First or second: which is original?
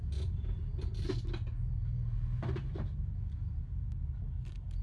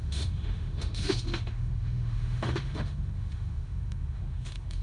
first